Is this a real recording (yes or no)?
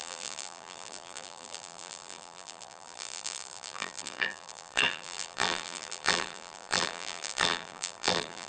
no